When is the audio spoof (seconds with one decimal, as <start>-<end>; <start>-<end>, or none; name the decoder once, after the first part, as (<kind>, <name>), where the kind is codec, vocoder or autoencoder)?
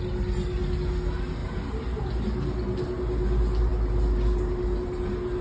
none